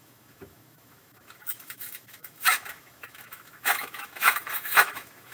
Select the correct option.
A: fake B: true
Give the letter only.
A